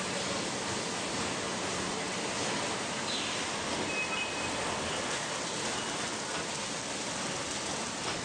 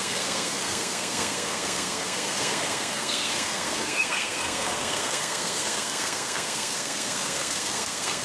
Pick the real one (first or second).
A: first